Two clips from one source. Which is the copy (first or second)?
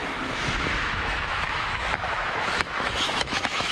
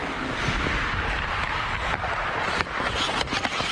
first